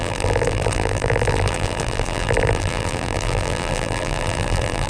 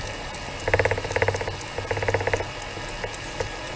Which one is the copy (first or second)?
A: first